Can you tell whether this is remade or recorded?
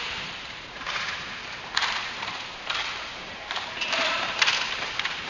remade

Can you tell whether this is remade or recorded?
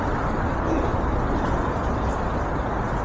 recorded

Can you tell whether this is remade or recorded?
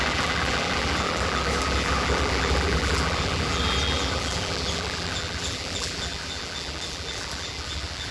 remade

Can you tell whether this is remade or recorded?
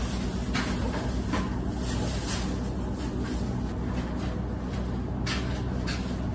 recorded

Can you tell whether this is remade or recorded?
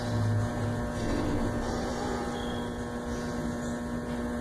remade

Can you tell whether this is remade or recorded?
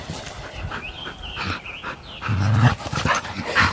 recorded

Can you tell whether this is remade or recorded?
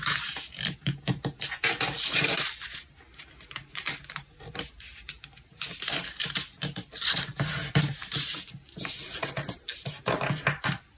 remade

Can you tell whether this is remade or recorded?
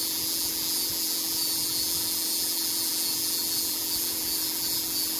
remade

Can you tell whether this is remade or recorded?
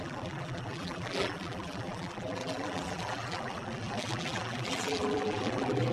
remade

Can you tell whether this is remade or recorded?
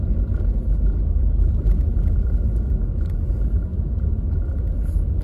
recorded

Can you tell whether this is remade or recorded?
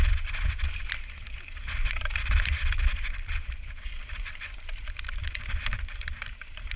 remade